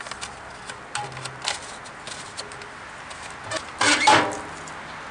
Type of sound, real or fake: real